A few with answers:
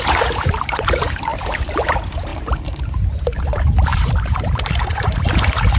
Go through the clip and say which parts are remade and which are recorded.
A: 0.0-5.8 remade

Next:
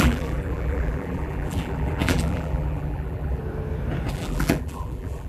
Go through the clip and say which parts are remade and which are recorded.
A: 0.0-3.4 remade; 3.4-4.1 recorded; 4.1-5.3 remade

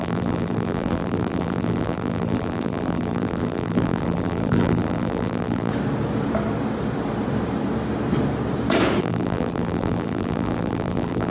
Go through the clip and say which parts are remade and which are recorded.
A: 0.0-5.7 remade; 5.7-9.0 recorded; 9.0-11.3 remade

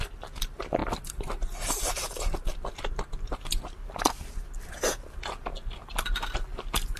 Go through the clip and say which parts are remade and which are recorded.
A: 0.0-0.8 recorded; 0.8-2.1 remade; 2.1-7.0 recorded

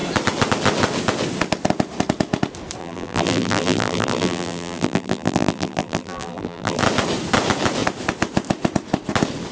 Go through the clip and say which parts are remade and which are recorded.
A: 0.0-2.8 recorded; 2.8-6.8 remade; 6.8-9.5 recorded

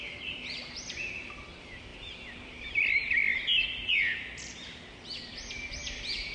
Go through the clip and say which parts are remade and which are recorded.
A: 0.0-3.3 remade; 3.3-4.4 recorded; 4.4-6.3 remade

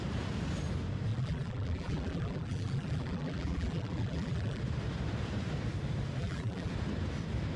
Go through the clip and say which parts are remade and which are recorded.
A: 0.0-1.1 recorded; 1.1-4.6 remade; 4.6-6.2 recorded; 6.2-6.7 remade; 6.7-7.6 recorded